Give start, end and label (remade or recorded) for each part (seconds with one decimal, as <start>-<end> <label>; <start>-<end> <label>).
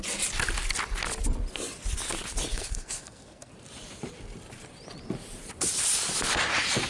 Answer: 0.0-2.5 recorded; 2.5-3.5 remade; 3.5-6.9 recorded